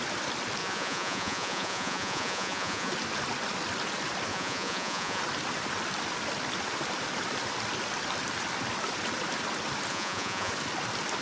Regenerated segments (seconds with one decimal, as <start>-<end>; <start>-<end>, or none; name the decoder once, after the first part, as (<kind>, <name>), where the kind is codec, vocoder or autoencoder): 0.6-2.9 (vocoder, Vocos); 4.3-5.2; 9.9-10.5